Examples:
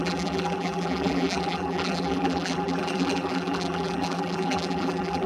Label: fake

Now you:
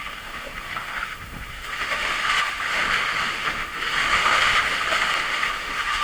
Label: fake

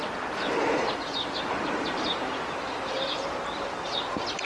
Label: fake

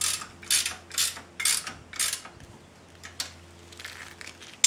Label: real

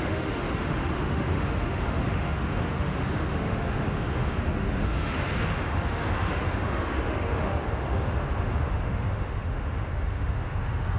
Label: fake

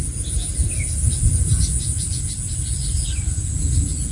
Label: real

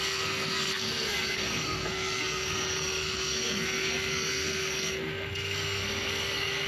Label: fake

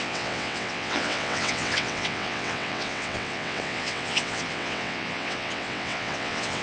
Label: fake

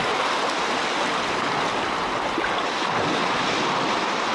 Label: real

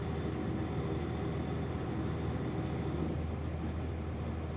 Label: real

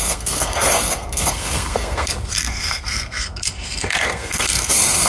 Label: fake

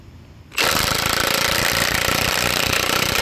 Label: real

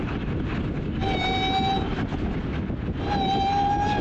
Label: real